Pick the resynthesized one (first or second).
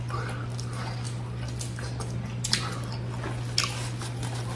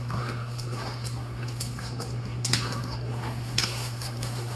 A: second